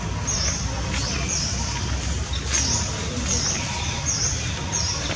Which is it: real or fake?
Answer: real